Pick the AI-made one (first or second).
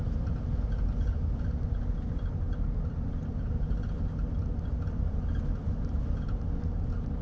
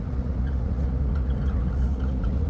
second